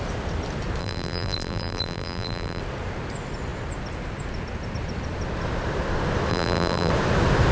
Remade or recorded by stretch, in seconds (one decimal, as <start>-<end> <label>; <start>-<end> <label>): 0.0-0.8 recorded; 0.8-2.6 remade; 2.6-6.3 recorded; 6.3-6.9 remade; 6.9-7.5 recorded